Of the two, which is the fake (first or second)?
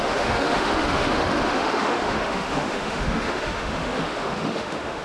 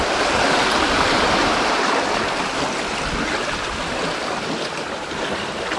first